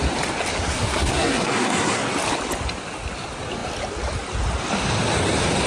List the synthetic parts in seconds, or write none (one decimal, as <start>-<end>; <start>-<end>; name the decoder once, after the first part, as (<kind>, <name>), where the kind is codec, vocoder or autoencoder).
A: 0.7-2.0 (codec, SNAC)